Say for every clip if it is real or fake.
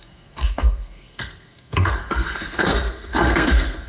fake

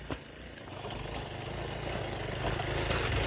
real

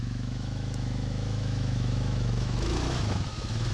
fake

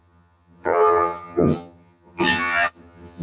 fake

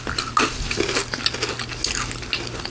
real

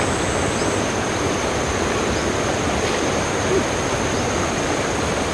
real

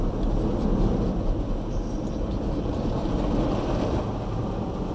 real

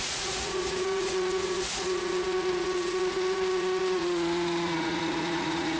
fake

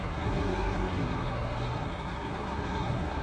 fake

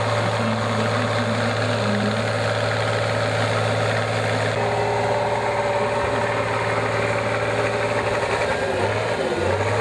real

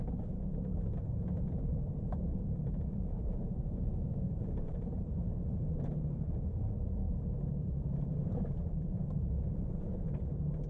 fake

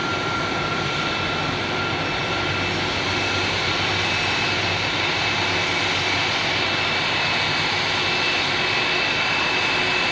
real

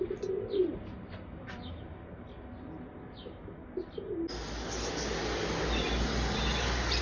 real